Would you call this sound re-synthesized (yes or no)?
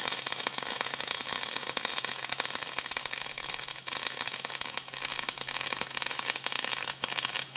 yes